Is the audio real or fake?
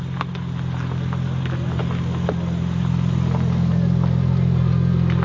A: real